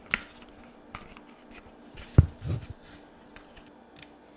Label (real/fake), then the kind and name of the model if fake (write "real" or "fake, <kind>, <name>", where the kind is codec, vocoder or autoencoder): real